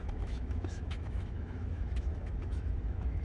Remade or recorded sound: remade